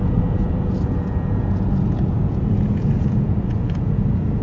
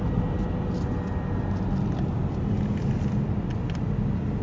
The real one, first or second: second